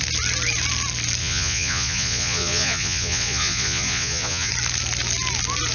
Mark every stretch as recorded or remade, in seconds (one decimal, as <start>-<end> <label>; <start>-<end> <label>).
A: 0.0-1.2 recorded; 1.2-4.5 remade; 4.5-5.7 recorded